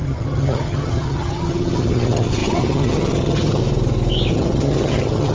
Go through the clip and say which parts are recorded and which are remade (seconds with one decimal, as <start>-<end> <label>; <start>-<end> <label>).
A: 0.0-3.6 remade; 3.6-4.3 recorded; 4.3-5.3 remade